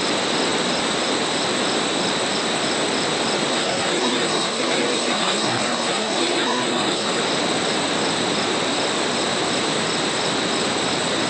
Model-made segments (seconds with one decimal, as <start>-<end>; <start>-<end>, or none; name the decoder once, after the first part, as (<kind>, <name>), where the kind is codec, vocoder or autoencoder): 3.5-7.2 (codec, SNAC)